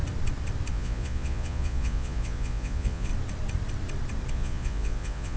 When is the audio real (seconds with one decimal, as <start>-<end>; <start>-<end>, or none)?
0.0-0.7; 3.1-4.3